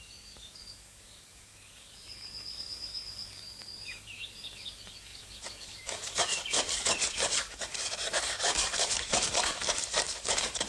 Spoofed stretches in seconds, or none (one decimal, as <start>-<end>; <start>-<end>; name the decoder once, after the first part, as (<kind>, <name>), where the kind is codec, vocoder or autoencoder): 0.0-10.7 (codec, DAC)